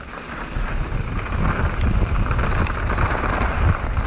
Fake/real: real